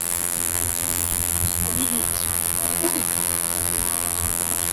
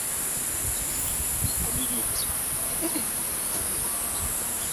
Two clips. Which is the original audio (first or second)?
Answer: second